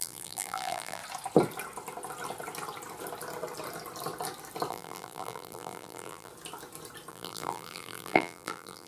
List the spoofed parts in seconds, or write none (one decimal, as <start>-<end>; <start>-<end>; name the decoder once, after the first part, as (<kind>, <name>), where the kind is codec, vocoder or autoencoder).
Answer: 0.0-1.0 (vocoder, BigVGAN v2); 4.7-6.3; 7.1-8.9